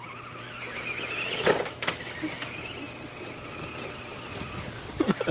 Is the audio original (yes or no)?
yes